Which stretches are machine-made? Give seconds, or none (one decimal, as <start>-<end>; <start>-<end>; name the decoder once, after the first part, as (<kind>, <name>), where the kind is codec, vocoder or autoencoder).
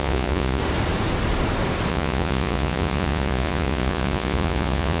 0.0-0.6 (vocoder, Vocos); 1.9-5.0